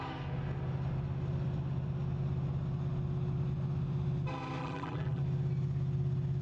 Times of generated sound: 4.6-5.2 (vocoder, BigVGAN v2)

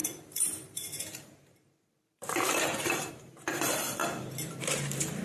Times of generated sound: 0.0-4.0 (vocoder, BigVGAN v2); 4.6-5.2

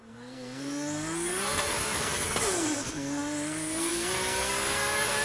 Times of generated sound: 0.0-5.2 (codec, SNAC)

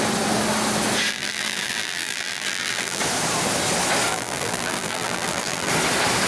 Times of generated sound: 1.1-3.0 (vocoder, BigVGAN v2); 4.1-5.7